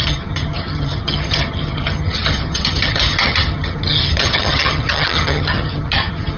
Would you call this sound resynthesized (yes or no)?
yes